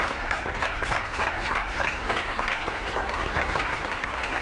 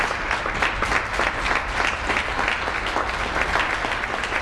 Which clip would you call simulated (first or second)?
first